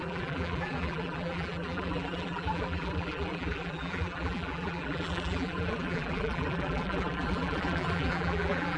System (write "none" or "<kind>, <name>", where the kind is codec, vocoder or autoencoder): vocoder, BigVGAN v2